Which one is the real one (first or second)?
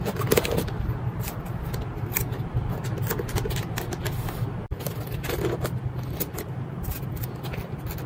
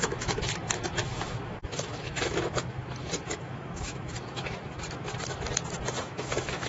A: first